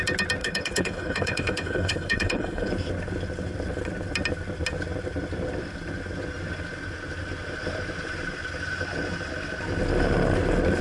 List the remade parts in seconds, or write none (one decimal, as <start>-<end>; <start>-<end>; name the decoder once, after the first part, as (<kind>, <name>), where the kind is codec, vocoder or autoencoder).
0.4-2.7 (codec, HILCodec)